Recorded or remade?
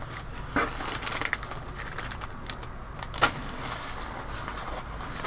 recorded